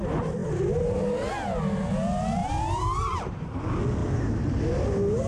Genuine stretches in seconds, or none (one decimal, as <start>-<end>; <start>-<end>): 0.0-2.4; 3.6-4.0; 4.6-5.3